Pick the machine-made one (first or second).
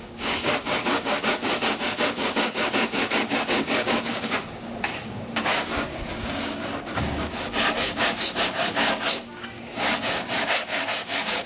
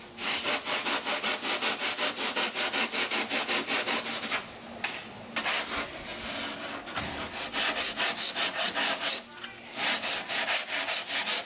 first